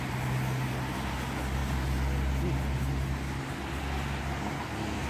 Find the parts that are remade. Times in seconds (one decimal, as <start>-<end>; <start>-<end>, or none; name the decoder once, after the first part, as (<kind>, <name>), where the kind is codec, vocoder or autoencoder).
none